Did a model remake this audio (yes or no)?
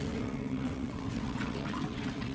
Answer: yes